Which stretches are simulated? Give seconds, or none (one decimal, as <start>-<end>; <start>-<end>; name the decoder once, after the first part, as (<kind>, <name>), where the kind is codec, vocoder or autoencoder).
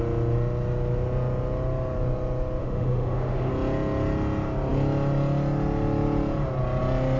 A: 2.6-3.5 (autoencoder, DAC-VAE)